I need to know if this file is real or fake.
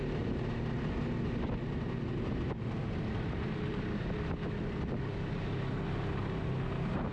real